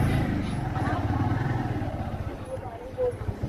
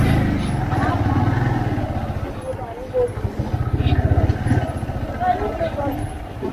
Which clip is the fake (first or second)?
first